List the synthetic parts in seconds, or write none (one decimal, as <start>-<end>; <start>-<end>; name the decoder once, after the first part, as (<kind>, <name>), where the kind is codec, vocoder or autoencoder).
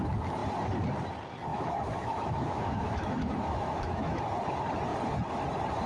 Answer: 1.5-4.2 (autoencoder, DAC-VAE)